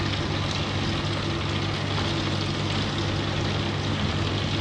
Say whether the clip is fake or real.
real